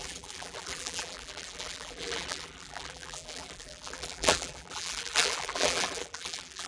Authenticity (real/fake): fake